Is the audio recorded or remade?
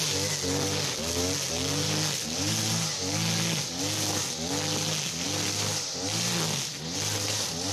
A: recorded